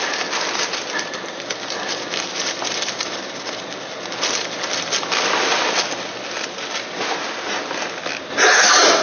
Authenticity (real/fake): real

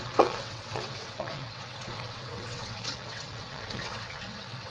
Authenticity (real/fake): fake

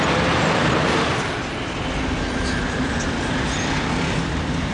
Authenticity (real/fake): real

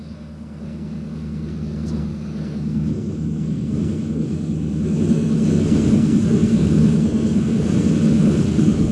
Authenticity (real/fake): fake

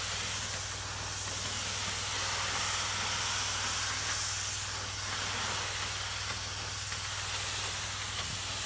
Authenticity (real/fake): real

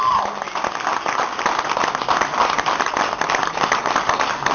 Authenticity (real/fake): real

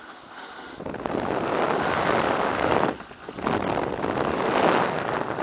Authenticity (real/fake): real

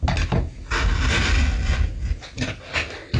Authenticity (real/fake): real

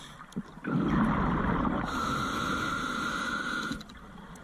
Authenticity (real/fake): real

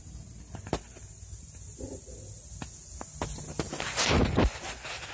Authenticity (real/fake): real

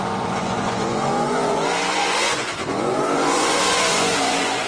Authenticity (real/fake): fake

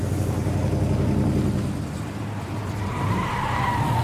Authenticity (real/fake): real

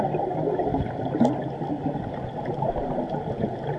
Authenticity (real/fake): real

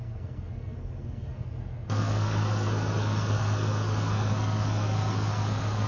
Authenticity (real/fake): fake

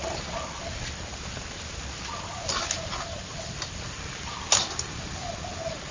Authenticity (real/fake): real